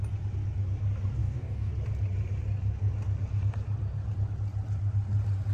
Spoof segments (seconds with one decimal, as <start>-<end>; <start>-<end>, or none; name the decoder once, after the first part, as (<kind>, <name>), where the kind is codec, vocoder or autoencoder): 1.2-1.7 (codec, DAC)